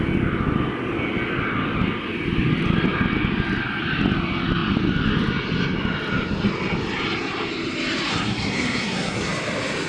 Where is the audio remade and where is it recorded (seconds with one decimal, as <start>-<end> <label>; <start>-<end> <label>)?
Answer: 0.0-8.1 recorded; 8.1-9.3 remade; 9.3-9.9 recorded